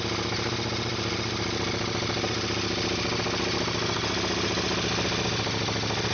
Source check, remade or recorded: recorded